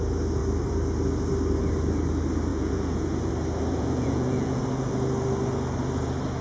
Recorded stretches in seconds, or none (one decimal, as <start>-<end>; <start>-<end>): 0.0-2.5; 3.3-3.7; 4.6-6.4